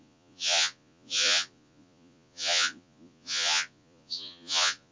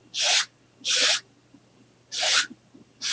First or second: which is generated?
first